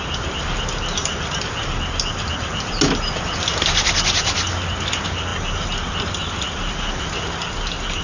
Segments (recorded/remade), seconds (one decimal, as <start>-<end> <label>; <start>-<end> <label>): 0.0-8.0 recorded

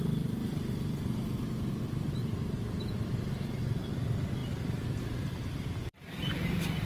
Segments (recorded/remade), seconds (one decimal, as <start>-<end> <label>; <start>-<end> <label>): 0.0-4.4 recorded; 4.4-6.9 remade